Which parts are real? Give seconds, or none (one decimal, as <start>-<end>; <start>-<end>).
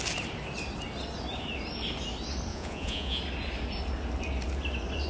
0.0-2.5; 3.2-5.1